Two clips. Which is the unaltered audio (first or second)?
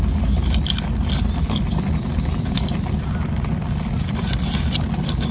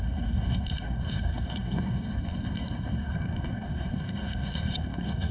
first